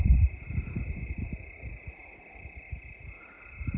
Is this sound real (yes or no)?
yes